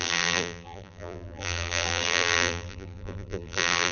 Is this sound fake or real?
fake